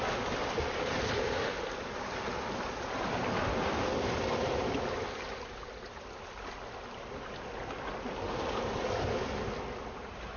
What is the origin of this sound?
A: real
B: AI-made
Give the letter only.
A